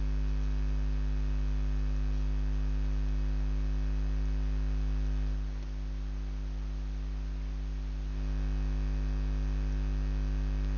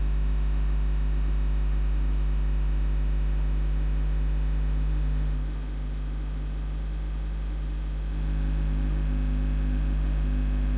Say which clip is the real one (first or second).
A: first